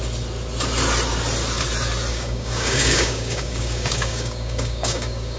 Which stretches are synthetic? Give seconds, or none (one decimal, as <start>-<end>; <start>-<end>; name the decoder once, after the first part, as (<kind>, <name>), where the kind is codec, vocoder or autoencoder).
2.1-5.4 (codec, DAC)